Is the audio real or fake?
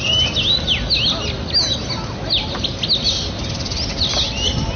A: real